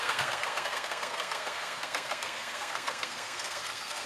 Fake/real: fake